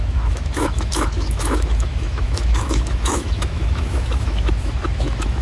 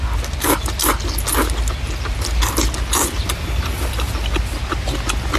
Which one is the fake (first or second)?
first